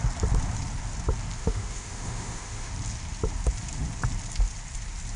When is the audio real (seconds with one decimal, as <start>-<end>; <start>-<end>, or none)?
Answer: 0.0-1.4; 2.7-5.2